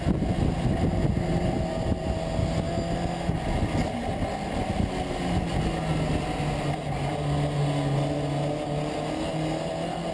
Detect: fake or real real